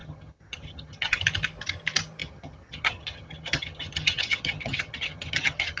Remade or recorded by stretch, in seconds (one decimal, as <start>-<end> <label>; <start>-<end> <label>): 0.0-1.2 remade; 1.2-2.2 recorded; 2.2-5.8 remade

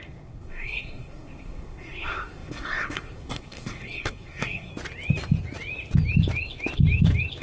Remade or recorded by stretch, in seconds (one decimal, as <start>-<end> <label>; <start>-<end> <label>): 0.0-4.7 remade; 4.7-7.4 recorded

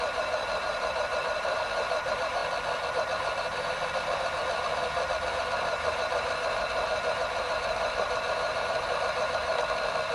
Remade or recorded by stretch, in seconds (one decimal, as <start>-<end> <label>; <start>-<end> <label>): 0.0-2.4 remade; 2.4-2.9 recorded; 2.9-4.4 remade; 4.4-5.3 recorded; 5.3-9.5 remade; 9.5-10.1 recorded

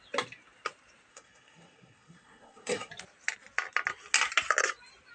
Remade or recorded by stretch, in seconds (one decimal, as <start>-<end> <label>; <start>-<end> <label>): 0.0-1.1 recorded; 1.1-2.9 remade; 2.9-5.1 recorded

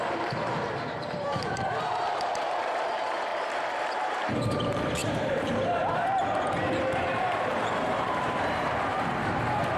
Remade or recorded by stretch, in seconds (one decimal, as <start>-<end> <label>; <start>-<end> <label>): 0.0-3.3 remade; 3.3-4.3 recorded; 4.3-9.8 remade